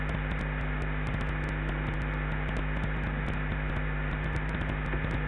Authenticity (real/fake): real